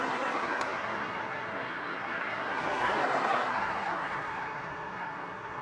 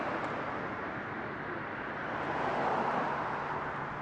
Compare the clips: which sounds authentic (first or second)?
second